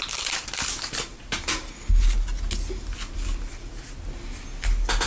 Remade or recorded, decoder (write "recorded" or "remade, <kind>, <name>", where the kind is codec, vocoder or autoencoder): recorded